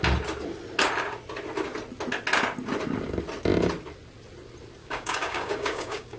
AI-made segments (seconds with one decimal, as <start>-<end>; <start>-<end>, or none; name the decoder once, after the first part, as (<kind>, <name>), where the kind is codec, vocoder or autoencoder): 4.8-6.2 (codec, DAC)